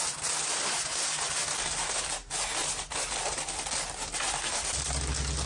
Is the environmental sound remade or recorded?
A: recorded